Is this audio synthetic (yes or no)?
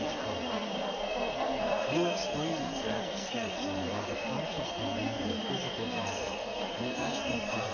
yes